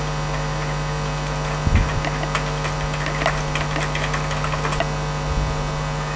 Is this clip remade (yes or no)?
no